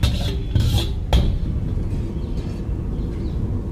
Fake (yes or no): no